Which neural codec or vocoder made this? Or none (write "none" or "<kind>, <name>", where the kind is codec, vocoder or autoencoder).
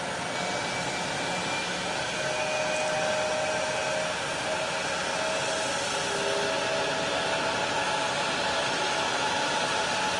none